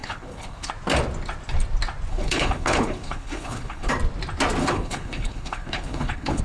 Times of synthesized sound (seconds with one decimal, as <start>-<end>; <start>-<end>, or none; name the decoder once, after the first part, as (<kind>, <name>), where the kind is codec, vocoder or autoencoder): 0.0-0.7 (codec, HILCodec); 2.1-3.9; 4.6-6.4